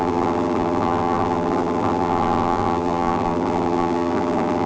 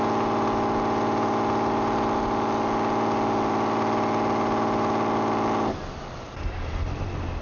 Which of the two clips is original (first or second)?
second